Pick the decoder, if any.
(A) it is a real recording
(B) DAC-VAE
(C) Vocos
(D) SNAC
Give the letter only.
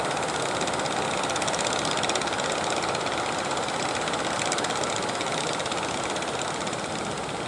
A